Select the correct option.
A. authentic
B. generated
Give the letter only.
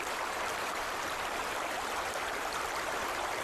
B